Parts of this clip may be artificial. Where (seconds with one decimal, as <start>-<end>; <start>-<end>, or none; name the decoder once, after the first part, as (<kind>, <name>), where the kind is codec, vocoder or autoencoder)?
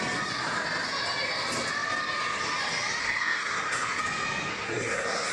3.0-4.0 (codec, SNAC); 4.5-5.3